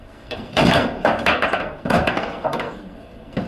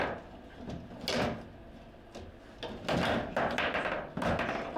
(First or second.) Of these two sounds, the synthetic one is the first